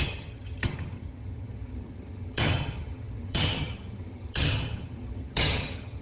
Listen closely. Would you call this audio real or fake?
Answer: fake